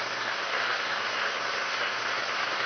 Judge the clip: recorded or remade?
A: remade